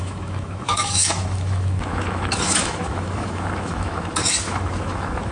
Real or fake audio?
fake